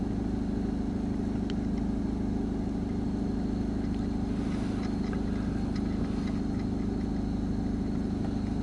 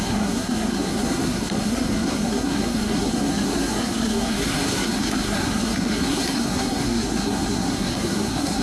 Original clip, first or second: first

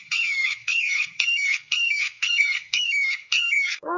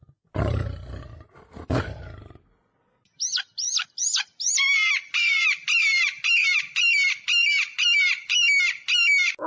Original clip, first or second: second